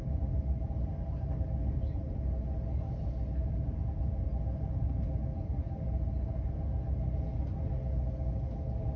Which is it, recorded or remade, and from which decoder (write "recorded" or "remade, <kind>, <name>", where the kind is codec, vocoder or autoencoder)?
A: recorded